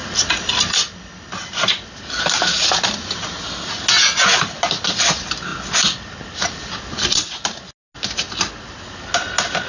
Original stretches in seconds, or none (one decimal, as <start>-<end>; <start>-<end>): 0.0-9.7